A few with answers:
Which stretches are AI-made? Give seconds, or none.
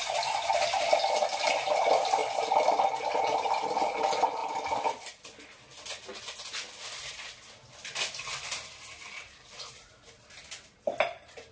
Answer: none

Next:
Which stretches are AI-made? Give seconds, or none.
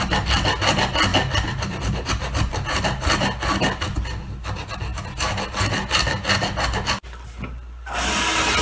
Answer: none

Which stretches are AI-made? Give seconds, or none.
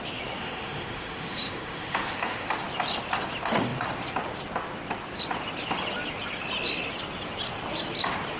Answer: 0.4-2.5 (autoencoder, DAC-VAE)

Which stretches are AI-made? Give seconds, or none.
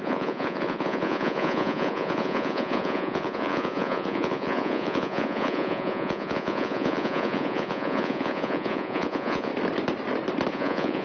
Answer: 0.0-9.5 (vocoder, Vocos); 10.5-11.0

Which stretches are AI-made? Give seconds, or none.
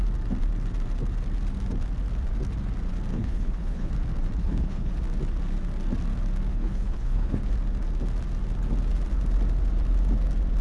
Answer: 3.1-3.9 (codec, HILCodec); 4.4-4.9; 6.5-7.4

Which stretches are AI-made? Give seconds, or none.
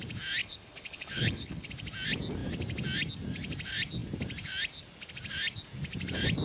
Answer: 0.4-1.7 (codec, HILCodec)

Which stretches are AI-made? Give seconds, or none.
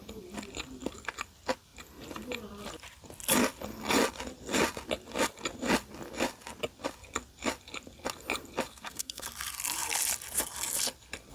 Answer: 8.7-9.3 (codec, SNAC)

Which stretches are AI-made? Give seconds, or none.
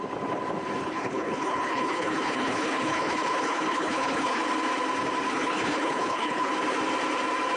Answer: 0.8-4.4 (codec, HILCodec); 5.3-6.5